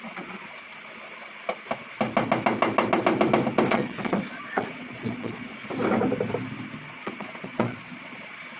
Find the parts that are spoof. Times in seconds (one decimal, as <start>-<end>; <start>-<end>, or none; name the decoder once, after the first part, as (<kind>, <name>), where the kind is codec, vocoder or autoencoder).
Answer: 0.0-0.7 (vocoder, Vocos); 3.7-5.5; 6.9-8.6